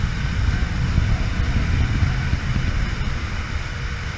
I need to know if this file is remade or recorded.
recorded